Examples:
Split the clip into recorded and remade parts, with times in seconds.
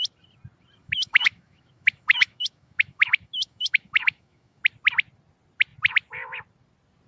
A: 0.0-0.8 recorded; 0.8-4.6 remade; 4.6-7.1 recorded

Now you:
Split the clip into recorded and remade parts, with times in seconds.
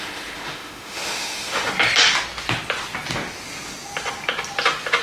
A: 0.0-1.7 remade; 1.7-5.0 recorded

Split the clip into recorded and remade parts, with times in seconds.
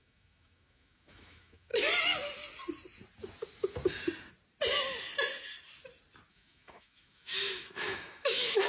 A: 0.0-1.7 remade; 1.7-6.3 recorded; 6.3-8.7 remade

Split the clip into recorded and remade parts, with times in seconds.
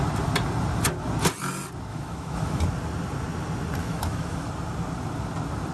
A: 0.0-1.9 recorded; 1.9-2.6 remade; 2.6-3.8 recorded; 3.8-4.5 remade; 4.5-5.7 recorded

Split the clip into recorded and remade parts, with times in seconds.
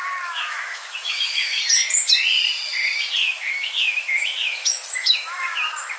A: 0.0-1.6 remade; 1.6-3.2 recorded; 3.2-6.0 remade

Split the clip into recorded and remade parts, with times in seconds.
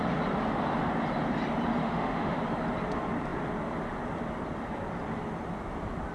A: 0.0-1.8 recorded; 1.8-2.4 remade; 2.4-6.1 recorded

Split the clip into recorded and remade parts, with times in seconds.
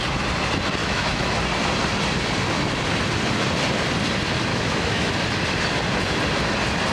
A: 0.0-0.8 recorded; 0.8-1.4 remade; 1.4-4.5 recorded; 4.5-5.1 remade; 5.1-6.9 recorded